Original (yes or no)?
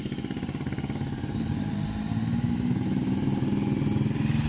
yes